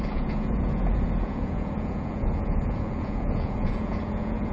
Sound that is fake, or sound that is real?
fake